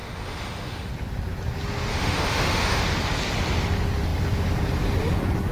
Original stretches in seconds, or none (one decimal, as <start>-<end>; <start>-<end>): 0.9-1.9; 2.8-5.5